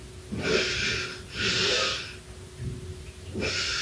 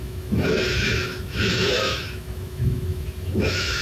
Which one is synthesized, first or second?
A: second